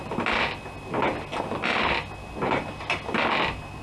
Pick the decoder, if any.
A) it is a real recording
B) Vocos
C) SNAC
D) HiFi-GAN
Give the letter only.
A